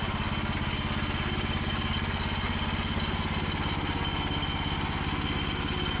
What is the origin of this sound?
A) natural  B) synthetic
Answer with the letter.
A